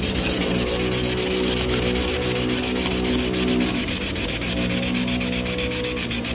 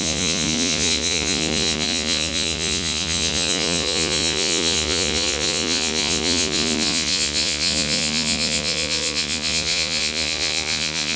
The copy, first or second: second